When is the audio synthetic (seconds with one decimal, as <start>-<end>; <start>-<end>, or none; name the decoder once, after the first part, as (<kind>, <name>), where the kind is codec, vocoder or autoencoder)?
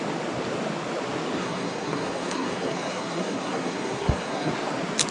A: 1.4-4.5 (codec, SNAC)